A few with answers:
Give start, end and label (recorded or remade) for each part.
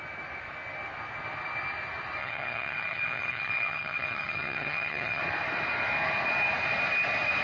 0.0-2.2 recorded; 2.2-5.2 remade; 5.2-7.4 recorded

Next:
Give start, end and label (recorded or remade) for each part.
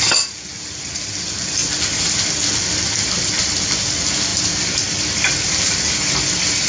0.0-6.7 recorded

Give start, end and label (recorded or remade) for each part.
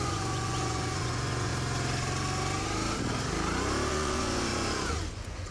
0.0-1.5 remade; 1.5-3.9 recorded; 3.9-5.5 remade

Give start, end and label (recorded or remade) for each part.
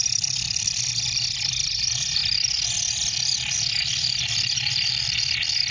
0.0-5.7 recorded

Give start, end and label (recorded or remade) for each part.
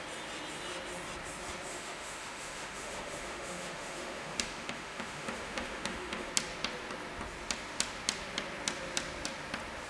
0.0-1.7 recorded; 1.7-6.3 remade; 6.3-9.9 recorded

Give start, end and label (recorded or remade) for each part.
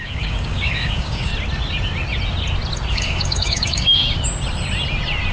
0.0-1.3 remade; 1.3-2.9 recorded; 2.9-4.0 remade; 4.0-5.3 recorded